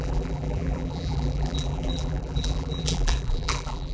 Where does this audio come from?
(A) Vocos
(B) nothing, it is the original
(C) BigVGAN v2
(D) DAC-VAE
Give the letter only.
C